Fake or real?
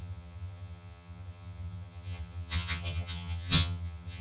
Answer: fake